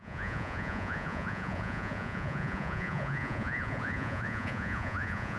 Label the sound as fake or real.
fake